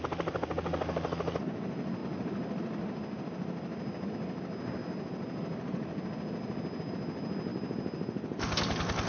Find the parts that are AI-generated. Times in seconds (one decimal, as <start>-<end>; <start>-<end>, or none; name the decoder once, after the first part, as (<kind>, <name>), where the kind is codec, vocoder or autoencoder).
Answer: none